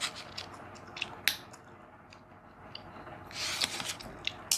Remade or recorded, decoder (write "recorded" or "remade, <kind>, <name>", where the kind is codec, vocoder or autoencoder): recorded